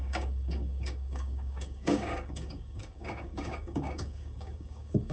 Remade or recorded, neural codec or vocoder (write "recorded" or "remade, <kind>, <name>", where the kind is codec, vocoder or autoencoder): remade, codec, DAC